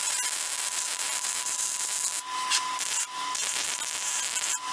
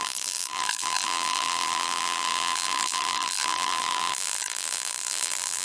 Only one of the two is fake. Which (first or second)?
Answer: second